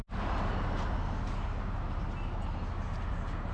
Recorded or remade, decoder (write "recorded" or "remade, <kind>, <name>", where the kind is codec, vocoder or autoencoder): recorded